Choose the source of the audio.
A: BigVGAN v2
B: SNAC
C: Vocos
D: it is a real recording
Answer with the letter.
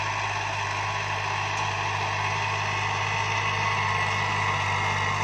D